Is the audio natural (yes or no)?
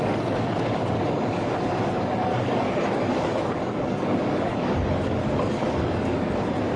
no